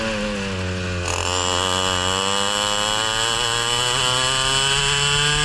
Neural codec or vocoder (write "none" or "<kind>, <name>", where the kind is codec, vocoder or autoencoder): none